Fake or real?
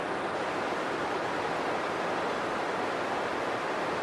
real